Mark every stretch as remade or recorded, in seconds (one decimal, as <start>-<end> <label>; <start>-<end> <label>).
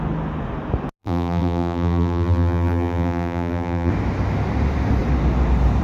0.0-1.0 recorded; 1.0-3.9 remade; 3.9-5.8 recorded